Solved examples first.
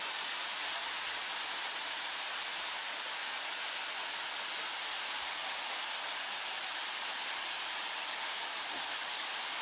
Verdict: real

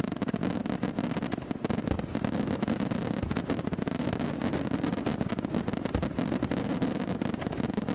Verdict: real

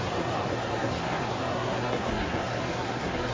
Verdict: fake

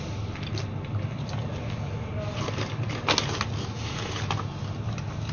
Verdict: real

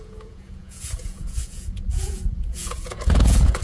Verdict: fake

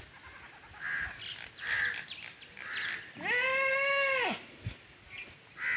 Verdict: real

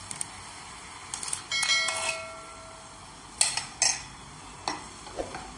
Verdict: real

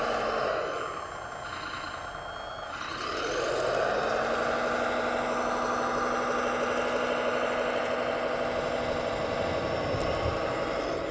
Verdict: real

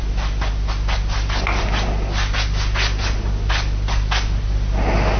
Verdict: real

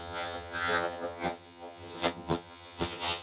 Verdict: fake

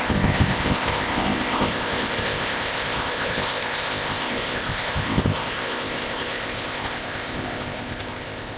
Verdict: fake